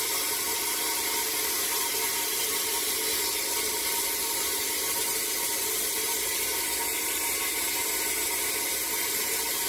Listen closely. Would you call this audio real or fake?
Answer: fake